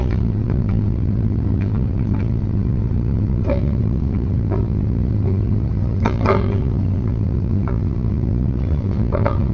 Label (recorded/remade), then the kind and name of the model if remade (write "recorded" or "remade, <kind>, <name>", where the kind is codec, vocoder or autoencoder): remade, vocoder, WaveNeXt